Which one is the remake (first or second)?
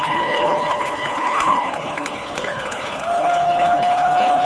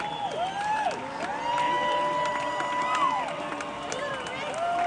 first